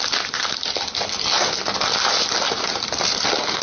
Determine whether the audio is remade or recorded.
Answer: recorded